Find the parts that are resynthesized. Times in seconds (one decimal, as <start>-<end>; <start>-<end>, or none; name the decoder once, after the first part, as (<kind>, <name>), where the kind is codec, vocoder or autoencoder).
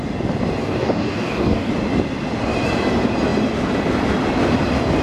0.6-1.7 (codec, DAC)